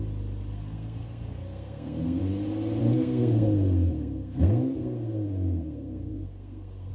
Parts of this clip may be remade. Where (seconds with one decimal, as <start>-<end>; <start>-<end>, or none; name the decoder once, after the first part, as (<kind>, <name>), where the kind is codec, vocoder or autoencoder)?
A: 0.5-2.2 (codec, SNAC); 2.8-6.9